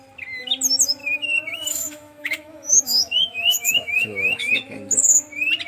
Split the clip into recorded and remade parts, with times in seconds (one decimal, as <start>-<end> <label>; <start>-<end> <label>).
0.0-1.0 recorded; 1.0-4.4 remade; 4.4-5.7 recorded